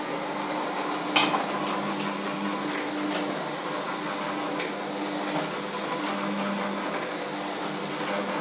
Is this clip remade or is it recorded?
recorded